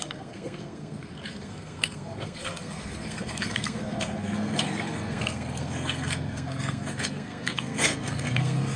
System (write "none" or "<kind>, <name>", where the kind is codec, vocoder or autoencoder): codec, SNAC